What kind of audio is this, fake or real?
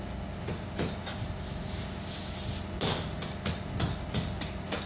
real